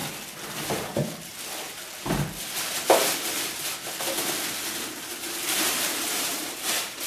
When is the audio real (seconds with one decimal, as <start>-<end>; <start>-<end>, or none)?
0.0-0.5; 1.3-4.9